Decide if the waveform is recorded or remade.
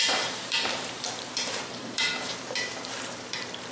remade